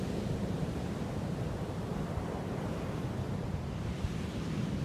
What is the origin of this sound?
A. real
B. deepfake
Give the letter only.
B